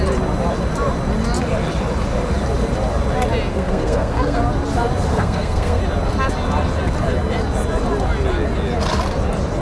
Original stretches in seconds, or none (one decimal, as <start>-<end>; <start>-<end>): 0.0-3.5; 4.4-5.1; 5.8-9.6